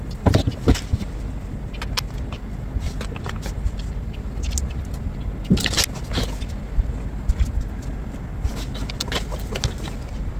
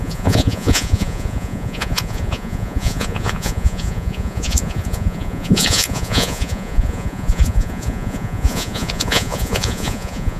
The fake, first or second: second